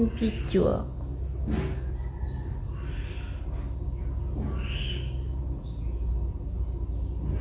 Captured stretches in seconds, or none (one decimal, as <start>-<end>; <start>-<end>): 0.0-7.4